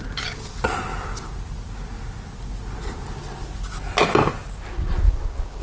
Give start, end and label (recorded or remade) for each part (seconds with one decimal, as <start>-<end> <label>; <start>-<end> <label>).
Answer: 0.0-5.6 recorded